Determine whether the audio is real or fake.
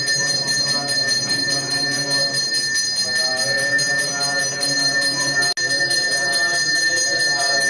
real